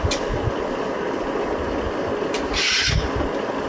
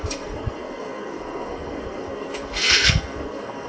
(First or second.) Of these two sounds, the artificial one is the second